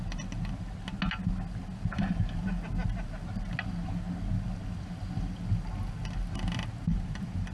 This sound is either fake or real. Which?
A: real